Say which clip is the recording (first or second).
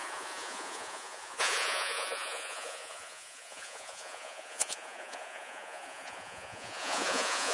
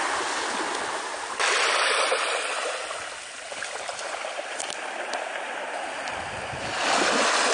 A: second